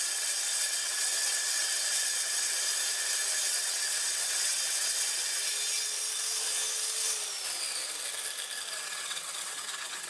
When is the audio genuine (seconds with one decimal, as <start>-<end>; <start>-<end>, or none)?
2.7-3.4; 5.3-8.7